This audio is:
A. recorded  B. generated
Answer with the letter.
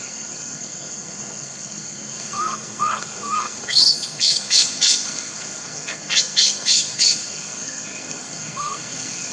B